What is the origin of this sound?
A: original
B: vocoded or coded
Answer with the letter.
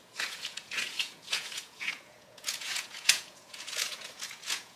B